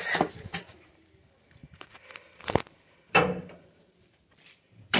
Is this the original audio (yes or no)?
no